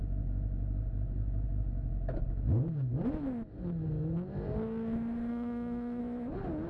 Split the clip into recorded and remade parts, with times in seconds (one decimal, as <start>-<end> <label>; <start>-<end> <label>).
0.0-5.3 recorded; 5.3-6.0 remade; 6.0-6.7 recorded

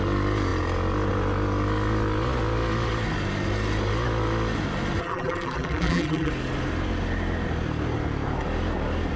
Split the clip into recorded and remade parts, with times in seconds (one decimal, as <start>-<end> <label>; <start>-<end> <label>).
0.0-5.0 recorded; 5.0-6.3 remade; 6.3-9.2 recorded